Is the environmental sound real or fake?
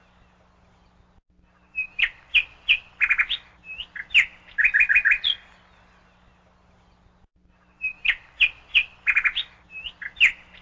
real